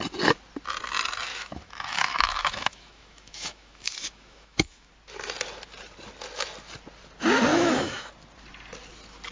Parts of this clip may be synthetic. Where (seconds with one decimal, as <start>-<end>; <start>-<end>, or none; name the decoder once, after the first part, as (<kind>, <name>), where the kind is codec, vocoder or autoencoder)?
1.3-4.9 (autoencoder, DAC-VAE); 7.5-8.1